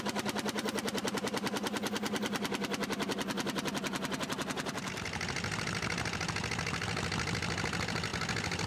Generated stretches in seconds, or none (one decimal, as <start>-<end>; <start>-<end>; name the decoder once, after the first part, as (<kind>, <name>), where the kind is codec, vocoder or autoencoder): none